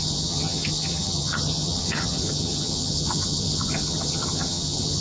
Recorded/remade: remade